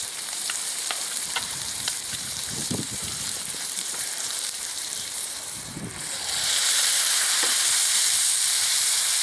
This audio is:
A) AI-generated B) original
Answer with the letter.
A